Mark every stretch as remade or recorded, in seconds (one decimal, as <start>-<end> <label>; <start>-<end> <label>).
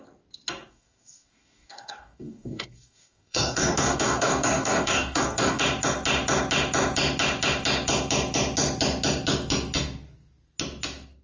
0.0-0.7 recorded; 0.7-5.6 remade; 5.6-11.2 recorded